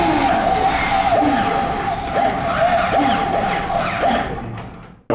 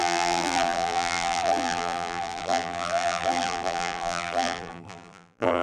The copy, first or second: second